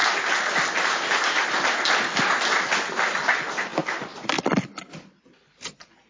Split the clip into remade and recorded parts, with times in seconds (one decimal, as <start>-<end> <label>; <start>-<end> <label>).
0.0-6.1 recorded